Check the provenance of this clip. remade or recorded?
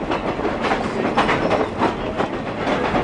recorded